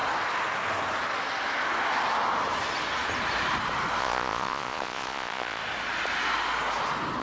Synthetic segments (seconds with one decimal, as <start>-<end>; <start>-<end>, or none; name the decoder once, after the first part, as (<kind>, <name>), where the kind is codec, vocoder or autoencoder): 4.0-5.6 (vocoder, Vocos)